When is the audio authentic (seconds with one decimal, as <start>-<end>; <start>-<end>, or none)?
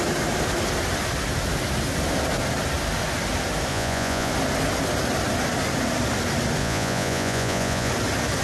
0.0-3.7; 4.3-6.6; 7.9-8.4